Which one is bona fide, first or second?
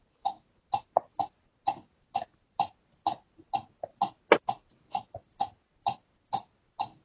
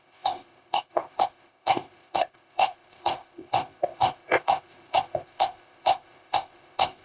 first